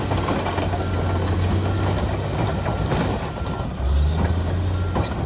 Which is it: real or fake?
real